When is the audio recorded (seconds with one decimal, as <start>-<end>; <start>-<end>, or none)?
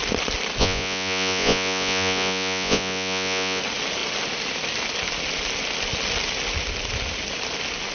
0.0-0.6; 3.6-7.9